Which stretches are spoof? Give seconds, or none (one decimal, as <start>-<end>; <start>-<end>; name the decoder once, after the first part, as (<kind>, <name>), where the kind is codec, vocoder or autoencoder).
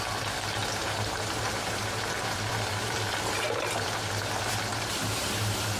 0.6-4.1 (vocoder, BigVGAN v2); 4.7-5.8